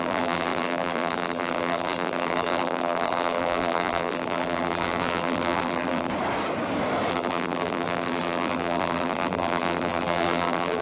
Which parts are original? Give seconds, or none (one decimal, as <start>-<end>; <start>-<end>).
6.1-7.1